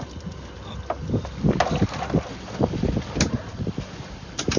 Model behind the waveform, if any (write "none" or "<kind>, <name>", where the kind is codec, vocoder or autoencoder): none